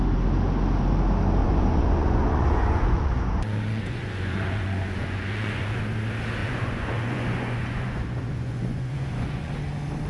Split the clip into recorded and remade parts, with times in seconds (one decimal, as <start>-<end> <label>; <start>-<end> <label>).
0.0-1.4 recorded; 1.4-5.8 remade; 5.8-6.4 recorded; 6.4-9.5 remade; 9.5-10.1 recorded